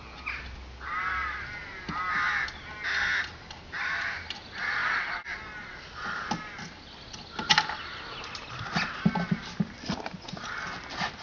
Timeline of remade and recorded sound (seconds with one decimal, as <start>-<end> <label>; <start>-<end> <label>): 0.0-11.2 recorded